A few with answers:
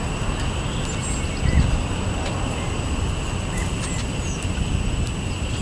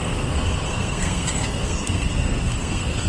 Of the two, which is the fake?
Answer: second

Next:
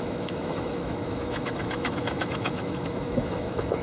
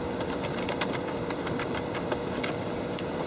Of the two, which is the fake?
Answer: first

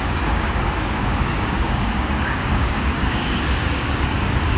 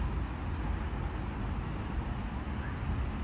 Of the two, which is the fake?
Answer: first